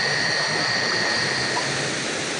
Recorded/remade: recorded